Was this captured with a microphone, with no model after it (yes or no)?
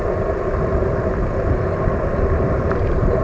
yes